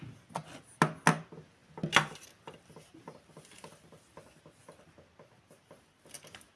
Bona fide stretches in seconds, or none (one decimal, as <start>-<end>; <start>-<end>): 0.0-6.6